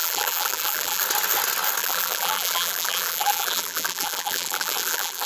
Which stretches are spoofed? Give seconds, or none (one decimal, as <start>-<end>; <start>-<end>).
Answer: 0.0-1.0; 1.8-5.3